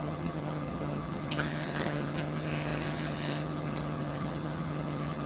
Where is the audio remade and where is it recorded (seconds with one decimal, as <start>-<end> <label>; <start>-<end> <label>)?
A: 0.0-5.3 remade